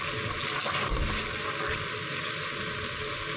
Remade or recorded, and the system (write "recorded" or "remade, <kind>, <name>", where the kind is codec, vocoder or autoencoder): recorded